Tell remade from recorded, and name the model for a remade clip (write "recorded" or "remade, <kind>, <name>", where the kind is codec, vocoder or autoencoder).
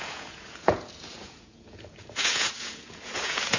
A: remade, vocoder, Vocos